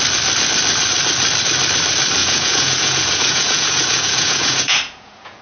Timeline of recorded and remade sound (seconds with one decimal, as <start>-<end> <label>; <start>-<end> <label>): 0.0-2.2 recorded; 2.2-5.4 remade